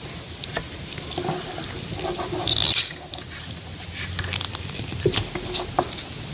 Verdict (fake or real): real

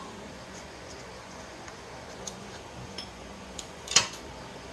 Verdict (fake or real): fake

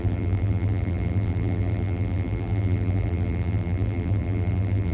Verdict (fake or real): fake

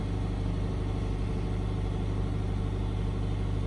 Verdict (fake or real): real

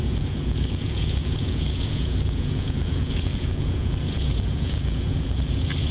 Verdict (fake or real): fake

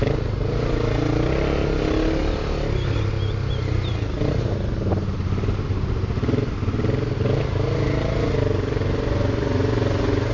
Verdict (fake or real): real